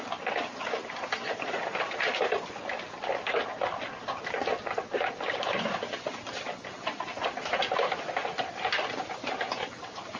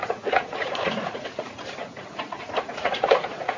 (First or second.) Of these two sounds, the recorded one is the first